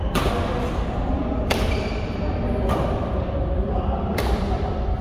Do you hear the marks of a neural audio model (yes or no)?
yes